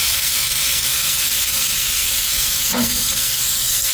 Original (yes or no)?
no